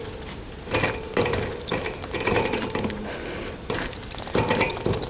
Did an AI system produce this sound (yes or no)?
no